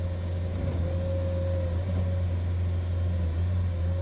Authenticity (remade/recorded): recorded